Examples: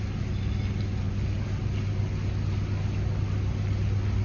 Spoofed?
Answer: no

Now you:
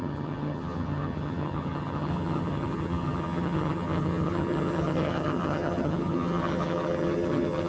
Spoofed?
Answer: yes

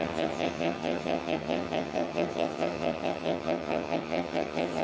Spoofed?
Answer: yes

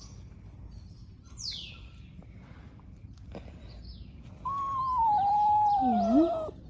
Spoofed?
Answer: no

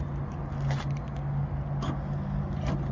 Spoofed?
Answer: no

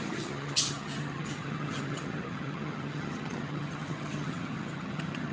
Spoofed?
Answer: yes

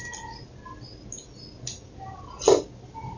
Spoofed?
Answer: no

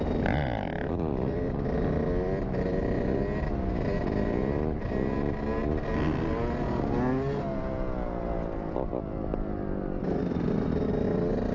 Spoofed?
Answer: no